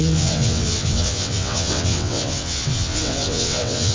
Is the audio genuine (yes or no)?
no